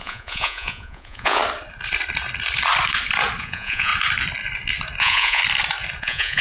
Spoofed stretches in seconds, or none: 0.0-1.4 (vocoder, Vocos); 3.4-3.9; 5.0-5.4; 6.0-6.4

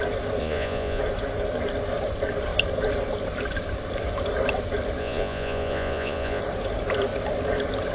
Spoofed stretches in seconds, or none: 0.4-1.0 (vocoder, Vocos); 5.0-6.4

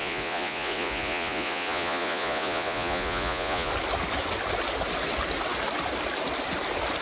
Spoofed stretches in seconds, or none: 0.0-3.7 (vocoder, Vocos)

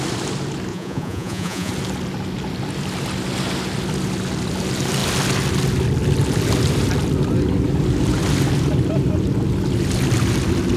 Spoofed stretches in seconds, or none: 0.7-1.7 (vocoder, Vocos)

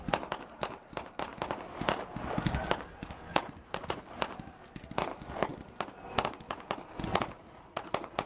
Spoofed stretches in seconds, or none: 3.3-4.0 (vocoder, Vocos); 7.1-8.3

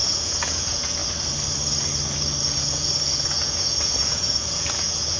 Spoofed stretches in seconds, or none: 0.0-1.0 (vocoder, Vocos); 2.4-5.2

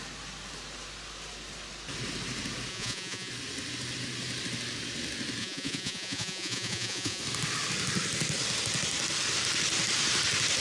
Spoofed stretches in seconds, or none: 2.7-3.3 (vocoder, Vocos); 5.4-7.2

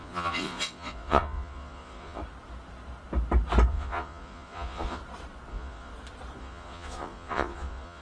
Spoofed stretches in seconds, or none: 0.0-2.2 (vocoder, Vocos); 3.7-5.0; 5.5-5.9; 6.4-8.0